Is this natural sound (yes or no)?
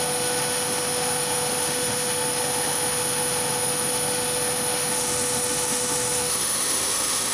no